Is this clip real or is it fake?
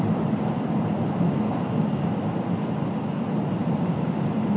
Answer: real